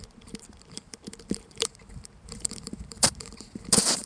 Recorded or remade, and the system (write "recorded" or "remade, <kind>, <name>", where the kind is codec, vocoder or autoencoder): remade, vocoder, BigVGAN v2